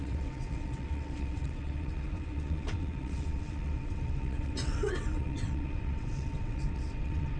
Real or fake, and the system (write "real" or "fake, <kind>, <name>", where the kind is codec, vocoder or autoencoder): fake, vocoder, WaveNeXt